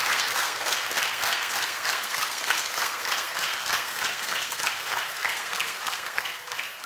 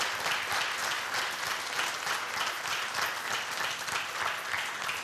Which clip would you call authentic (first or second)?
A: second